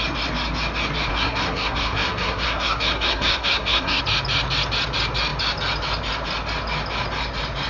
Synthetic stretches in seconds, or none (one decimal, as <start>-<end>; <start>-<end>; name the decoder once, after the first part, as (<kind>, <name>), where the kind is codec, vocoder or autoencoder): 1.1-4.0 (codec, SNAC)